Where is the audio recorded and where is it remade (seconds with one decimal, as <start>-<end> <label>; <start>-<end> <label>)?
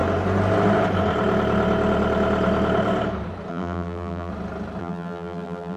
0.0-3.5 recorded; 3.5-4.3 remade; 4.3-4.8 recorded; 4.8-5.8 remade